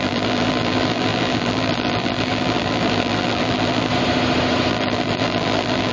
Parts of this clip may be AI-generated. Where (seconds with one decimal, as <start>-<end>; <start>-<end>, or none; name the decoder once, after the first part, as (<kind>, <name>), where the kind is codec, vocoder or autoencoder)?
0.0-3.9 (vocoder, BigVGAN v2); 4.7-5.9